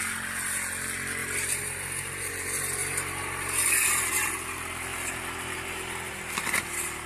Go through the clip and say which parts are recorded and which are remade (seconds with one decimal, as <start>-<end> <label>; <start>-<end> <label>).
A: 0.0-1.2 recorded; 1.2-2.3 remade; 2.3-2.8 recorded; 2.8-3.6 remade; 3.6-4.9 recorded; 4.9-7.1 remade